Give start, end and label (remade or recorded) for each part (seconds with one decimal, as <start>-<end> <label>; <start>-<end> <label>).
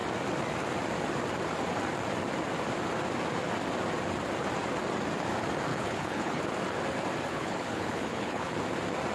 0.0-5.7 recorded; 5.7-6.4 remade; 6.4-7.3 recorded; 7.3-8.5 remade; 8.5-9.1 recorded